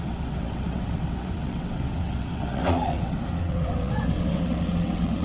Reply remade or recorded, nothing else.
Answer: remade